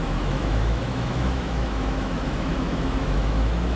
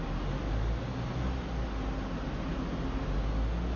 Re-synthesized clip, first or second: first